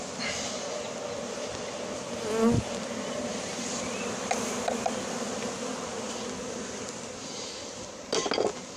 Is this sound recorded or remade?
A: recorded